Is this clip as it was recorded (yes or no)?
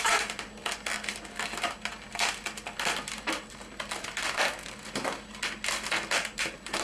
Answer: yes